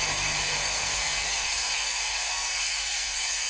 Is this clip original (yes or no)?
no